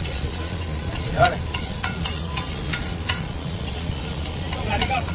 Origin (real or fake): fake